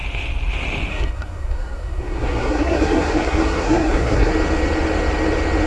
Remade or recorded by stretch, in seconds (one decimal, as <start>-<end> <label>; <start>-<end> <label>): 0.0-0.9 recorded; 0.9-4.3 remade; 4.3-5.7 recorded